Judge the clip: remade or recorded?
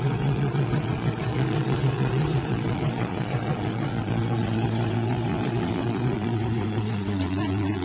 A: remade